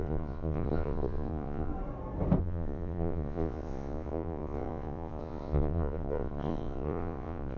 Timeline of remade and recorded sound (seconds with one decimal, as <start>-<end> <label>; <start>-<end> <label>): 0.0-1.7 remade; 1.7-2.4 recorded; 2.4-7.6 remade